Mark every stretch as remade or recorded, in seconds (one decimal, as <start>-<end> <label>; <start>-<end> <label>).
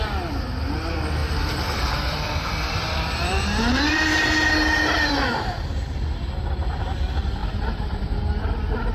0.0-1.2 recorded; 1.2-4.1 remade; 4.1-7.4 recorded; 7.4-8.2 remade; 8.2-8.9 recorded